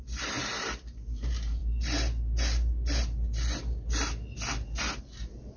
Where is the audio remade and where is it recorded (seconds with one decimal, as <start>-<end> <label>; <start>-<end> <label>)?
0.0-5.6 recorded